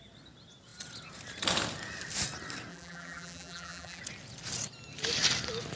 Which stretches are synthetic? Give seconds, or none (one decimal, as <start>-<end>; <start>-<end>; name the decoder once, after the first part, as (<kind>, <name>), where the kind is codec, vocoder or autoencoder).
2.7-4.0 (vocoder, BigVGAN v2)